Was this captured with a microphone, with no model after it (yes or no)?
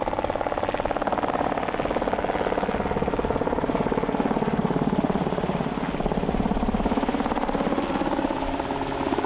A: yes